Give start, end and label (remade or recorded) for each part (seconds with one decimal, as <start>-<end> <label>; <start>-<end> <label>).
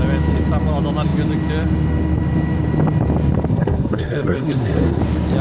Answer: 0.0-3.5 recorded; 3.5-5.0 remade; 5.0-5.4 recorded